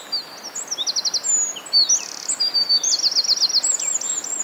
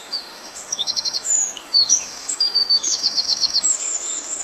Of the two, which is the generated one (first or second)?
second